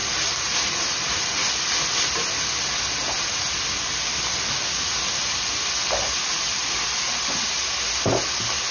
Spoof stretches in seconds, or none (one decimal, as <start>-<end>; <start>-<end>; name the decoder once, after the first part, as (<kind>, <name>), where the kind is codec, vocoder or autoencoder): none